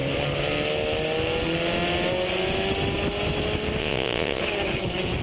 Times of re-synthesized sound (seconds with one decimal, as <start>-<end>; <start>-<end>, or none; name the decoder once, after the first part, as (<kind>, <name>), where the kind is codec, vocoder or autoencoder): 3.8-4.4 (vocoder, Vocos)